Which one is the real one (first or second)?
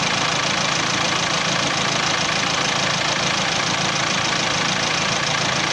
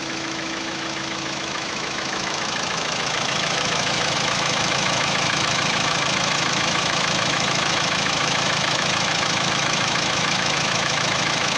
first